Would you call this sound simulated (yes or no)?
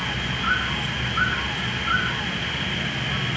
no